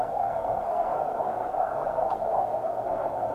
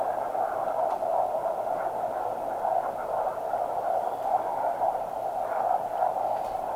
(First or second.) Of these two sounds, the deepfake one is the first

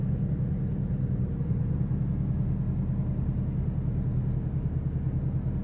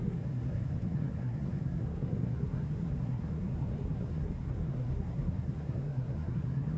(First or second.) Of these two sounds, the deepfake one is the second